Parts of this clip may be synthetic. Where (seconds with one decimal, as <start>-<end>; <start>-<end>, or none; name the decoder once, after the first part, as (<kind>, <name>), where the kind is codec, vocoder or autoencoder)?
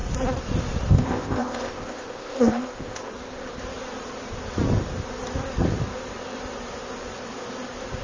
0.9-3.1 (codec, ZipCodec)